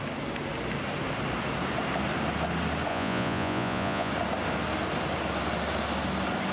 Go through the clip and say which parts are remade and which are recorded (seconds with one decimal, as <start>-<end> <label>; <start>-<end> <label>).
0.0-2.9 recorded; 2.9-4.1 remade; 4.1-6.5 recorded